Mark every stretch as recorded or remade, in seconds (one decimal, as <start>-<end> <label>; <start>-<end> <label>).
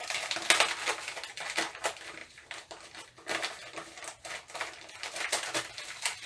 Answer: 0.0-2.2 recorded; 2.2-3.0 remade; 3.0-6.3 recorded